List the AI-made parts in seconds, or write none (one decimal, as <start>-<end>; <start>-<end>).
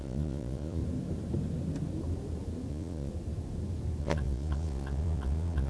0.0-0.8; 2.7-3.1; 4.0-5.7